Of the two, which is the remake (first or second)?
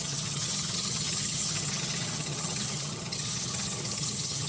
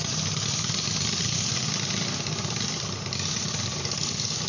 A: first